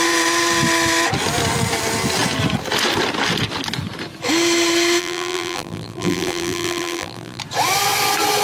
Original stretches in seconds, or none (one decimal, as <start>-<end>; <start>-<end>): 0.0-5.0; 7.4-8.4